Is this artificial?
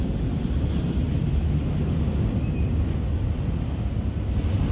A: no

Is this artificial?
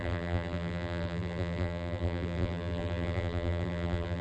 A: yes